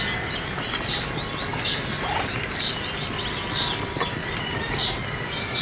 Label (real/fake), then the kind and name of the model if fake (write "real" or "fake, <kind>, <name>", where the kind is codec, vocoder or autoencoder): real